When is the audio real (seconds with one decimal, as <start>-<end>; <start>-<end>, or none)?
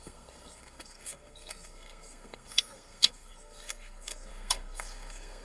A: none